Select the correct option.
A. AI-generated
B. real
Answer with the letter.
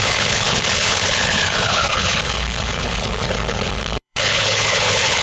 A